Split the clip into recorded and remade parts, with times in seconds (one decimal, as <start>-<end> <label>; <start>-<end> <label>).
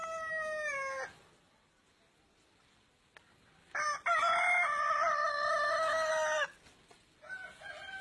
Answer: 0.0-5.2 recorded; 5.2-6.1 remade; 6.1-8.0 recorded